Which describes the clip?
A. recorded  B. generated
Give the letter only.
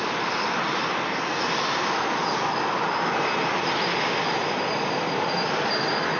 A